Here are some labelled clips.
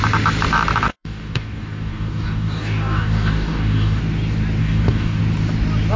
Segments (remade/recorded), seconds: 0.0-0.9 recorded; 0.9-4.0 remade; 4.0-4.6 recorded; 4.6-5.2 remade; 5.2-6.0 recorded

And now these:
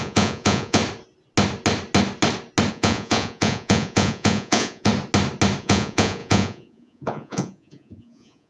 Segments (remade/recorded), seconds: 0.0-0.8 remade; 0.8-2.7 recorded; 2.7-4.9 remade; 4.9-5.6 recorded; 5.6-8.5 remade

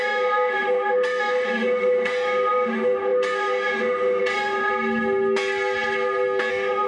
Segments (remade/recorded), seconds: 0.0-4.7 remade; 4.7-6.5 recorded; 6.5-6.9 remade